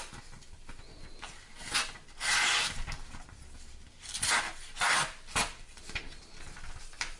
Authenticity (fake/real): real